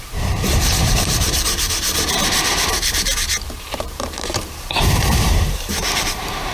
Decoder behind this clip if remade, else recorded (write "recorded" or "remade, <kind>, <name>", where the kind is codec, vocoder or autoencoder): remade, vocoder, BigVGAN v2